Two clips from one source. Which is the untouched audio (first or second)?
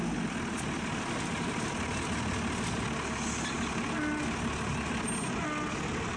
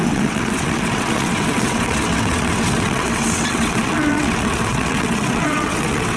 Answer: first